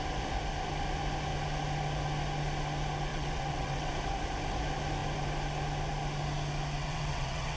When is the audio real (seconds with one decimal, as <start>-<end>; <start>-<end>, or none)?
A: 0.0-3.1; 3.9-6.8